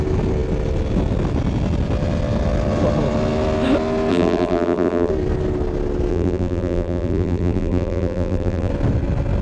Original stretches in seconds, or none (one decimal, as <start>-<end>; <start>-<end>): 0.0-4.1; 5.1-6.1; 8.7-9.4